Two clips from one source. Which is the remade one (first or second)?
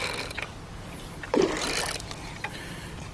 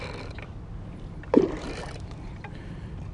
second